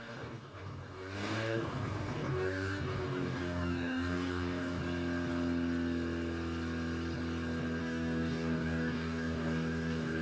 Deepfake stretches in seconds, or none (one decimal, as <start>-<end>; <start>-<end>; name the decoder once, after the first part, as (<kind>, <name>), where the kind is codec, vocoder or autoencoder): 0.0-4.8 (codec, DAC); 7.8-10.2